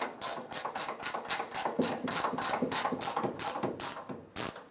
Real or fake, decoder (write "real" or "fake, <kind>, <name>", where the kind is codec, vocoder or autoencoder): real